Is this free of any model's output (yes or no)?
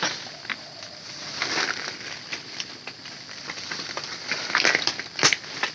no